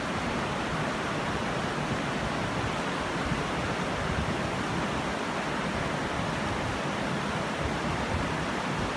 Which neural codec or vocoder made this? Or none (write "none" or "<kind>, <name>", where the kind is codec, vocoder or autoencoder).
none